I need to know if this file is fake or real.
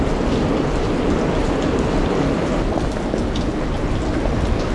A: real